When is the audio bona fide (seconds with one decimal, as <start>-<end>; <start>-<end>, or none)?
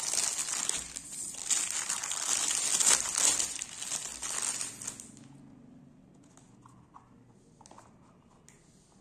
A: 0.0-9.0